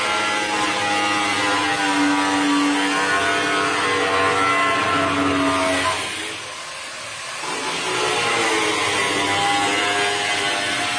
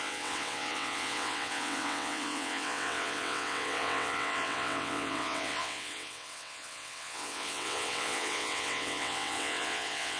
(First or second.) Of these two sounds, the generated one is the second